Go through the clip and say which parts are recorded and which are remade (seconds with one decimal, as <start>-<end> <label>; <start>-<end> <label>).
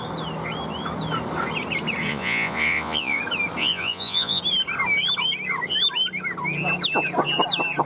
0.0-2.1 recorded; 2.1-3.2 remade; 3.2-3.6 recorded; 3.6-4.4 remade; 4.4-7.9 recorded